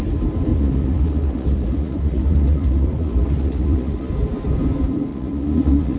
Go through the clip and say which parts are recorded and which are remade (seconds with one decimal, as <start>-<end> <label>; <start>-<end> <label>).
0.0-0.5 recorded; 0.5-4.1 remade; 4.1-5.1 recorded; 5.1-6.0 remade